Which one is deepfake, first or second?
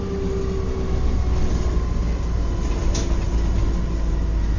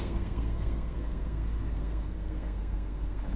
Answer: second